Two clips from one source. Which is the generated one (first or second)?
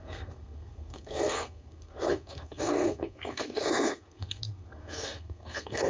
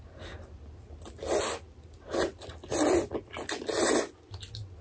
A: first